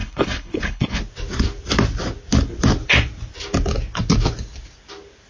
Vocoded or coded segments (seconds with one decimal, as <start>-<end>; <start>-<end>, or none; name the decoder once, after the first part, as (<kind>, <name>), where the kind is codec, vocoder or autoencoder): 0.0-1.0 (codec, HILCodec)